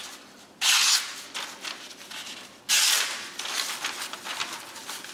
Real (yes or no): yes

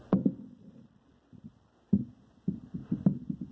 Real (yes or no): yes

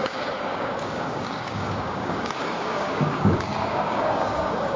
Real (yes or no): no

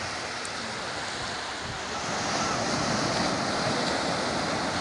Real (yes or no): yes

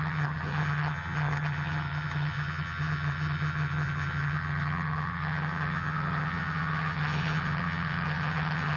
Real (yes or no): no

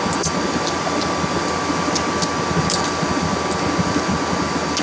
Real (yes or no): yes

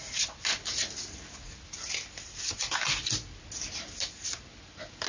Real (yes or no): yes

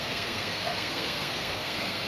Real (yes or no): no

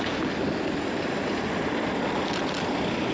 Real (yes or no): yes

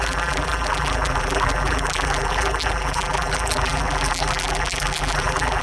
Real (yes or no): no